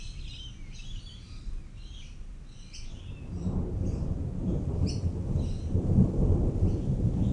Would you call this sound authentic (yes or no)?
yes